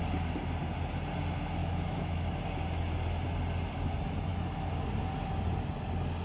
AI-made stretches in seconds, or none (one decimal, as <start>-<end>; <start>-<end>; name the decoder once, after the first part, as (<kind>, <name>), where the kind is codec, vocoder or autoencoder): 1.6-2.3 (autoencoder, DAC-VAE)